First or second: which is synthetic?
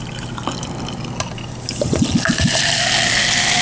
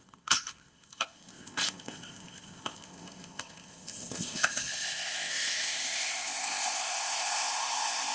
second